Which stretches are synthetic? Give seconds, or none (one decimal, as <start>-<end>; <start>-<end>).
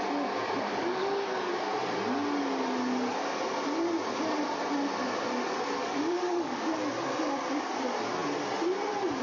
0.7-1.5; 5.8-6.6